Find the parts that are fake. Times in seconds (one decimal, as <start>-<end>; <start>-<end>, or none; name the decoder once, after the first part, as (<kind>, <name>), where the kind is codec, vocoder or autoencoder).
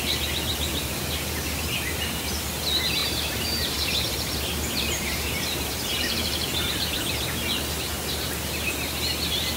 0.5-1.0 (vocoder, BigVGAN v2); 3.0-7.5